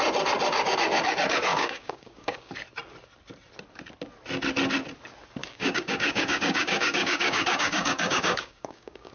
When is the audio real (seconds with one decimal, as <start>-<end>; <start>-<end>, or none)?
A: 0.0-1.5; 2.5-5.4